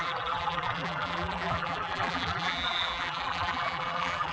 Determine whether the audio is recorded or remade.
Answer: remade